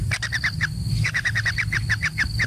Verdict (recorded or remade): recorded